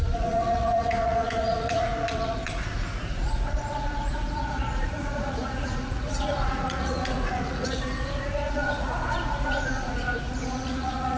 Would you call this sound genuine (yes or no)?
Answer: no